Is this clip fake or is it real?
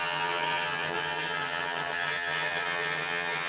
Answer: fake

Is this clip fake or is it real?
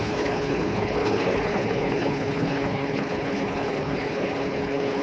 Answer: fake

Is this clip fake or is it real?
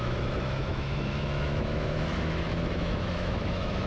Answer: fake